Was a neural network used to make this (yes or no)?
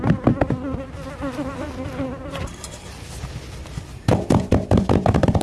no